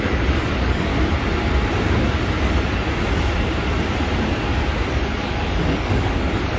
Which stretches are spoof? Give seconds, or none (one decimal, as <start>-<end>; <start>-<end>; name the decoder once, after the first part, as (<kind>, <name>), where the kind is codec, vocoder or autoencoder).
0.0-0.9 (codec, DAC); 4.9-6.6